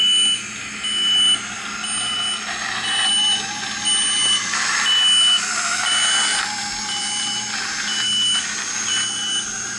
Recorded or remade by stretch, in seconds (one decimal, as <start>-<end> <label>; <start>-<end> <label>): 0.0-9.8 recorded